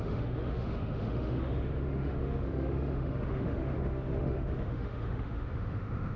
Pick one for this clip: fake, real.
fake